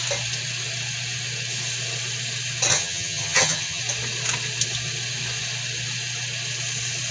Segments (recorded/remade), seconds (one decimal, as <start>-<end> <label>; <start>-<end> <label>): 0.0-2.7 recorded; 2.7-3.8 remade; 3.8-7.1 recorded